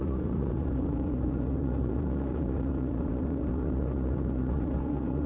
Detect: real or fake fake